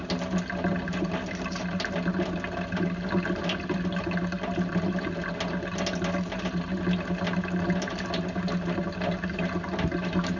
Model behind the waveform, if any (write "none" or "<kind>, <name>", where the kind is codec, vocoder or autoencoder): none